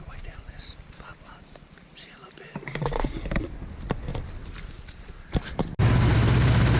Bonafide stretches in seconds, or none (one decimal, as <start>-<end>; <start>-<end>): 0.0-1.1; 3.7-6.8